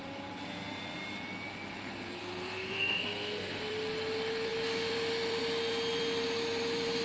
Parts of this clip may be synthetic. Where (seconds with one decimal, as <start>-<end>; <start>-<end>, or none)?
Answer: 2.2-3.6